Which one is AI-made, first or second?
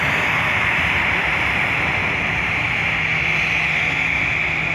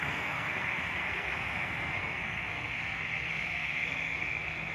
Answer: second